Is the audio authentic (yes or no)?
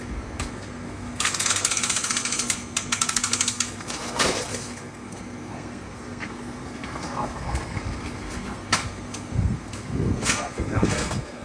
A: no